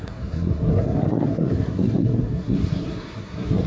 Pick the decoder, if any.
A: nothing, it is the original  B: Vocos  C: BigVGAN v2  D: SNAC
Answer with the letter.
D